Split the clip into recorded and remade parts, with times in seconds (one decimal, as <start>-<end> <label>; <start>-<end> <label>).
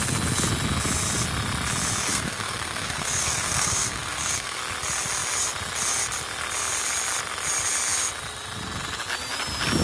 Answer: 0.0-2.1 recorded; 2.1-4.6 remade; 4.6-9.8 recorded